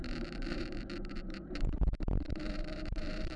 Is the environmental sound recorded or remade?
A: remade